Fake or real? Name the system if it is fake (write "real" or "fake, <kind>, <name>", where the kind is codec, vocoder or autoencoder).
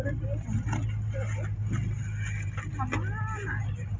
real